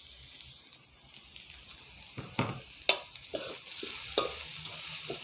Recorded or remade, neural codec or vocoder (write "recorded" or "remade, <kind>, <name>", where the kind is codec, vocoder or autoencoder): recorded